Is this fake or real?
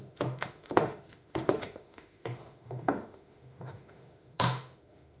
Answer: fake